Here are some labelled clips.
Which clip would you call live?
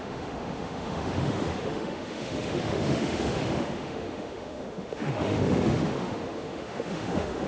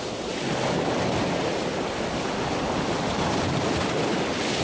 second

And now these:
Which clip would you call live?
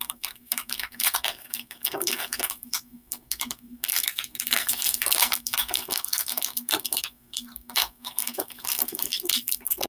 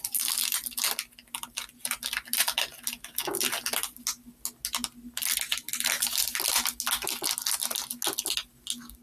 second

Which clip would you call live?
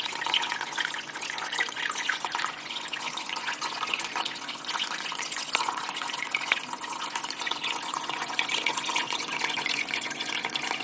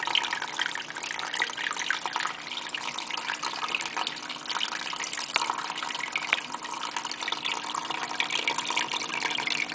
second